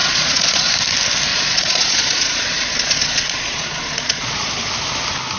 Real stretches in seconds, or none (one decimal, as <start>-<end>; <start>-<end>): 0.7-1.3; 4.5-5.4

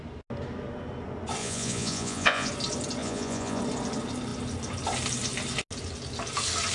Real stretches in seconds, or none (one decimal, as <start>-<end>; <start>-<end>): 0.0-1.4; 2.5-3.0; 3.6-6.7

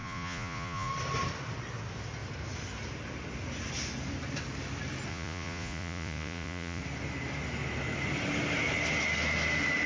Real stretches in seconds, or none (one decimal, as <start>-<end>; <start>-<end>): 0.9-5.1; 6.8-9.9